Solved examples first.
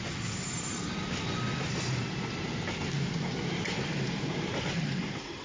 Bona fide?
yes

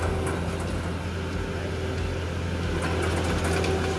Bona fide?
yes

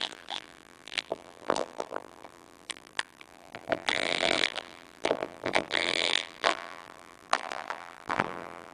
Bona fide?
no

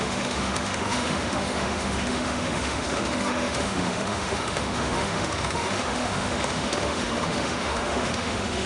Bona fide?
no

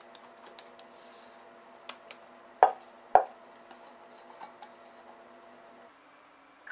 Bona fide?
yes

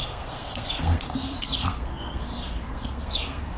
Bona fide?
no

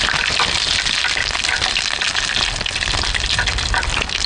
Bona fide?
yes